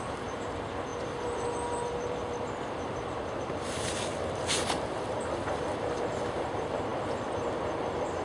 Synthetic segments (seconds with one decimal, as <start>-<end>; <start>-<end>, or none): 0.0-8.2